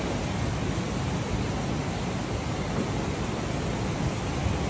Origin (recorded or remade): recorded